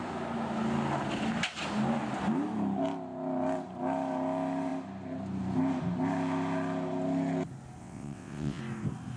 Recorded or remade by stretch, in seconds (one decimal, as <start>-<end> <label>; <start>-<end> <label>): 0.0-7.8 recorded; 7.8-8.6 remade; 8.6-9.2 recorded